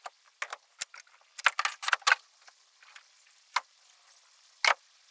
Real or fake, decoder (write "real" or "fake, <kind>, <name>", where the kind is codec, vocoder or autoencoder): real